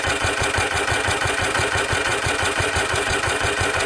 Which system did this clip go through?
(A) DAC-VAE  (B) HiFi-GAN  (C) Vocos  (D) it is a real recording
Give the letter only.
C